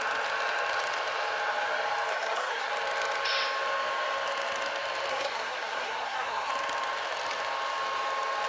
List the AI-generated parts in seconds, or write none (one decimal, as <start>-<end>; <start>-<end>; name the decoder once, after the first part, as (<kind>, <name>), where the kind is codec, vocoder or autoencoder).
2.1-2.7 (codec, SNAC); 5.1-6.5